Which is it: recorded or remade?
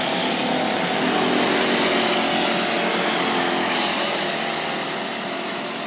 recorded